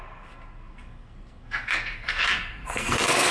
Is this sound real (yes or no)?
no